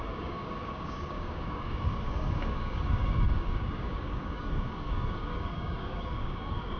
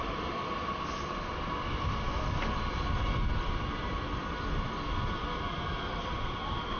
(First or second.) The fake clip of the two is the first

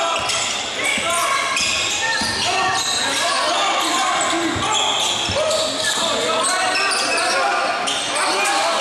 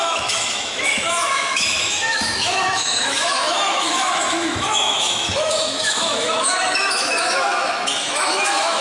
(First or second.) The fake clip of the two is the second